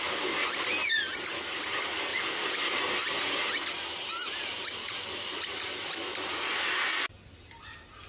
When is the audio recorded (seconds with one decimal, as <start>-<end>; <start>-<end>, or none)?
0.0-2.1; 2.8-4.2; 6.6-8.1